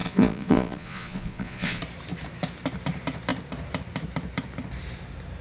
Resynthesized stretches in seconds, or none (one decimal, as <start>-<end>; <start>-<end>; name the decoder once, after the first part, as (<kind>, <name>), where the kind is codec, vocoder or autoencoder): 0.0-1.8 (vocoder, Vocos)